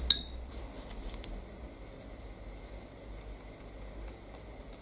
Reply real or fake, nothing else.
real